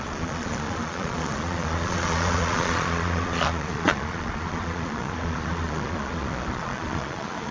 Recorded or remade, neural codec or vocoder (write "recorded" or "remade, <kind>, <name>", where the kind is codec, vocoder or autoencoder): remade, vocoder, Vocos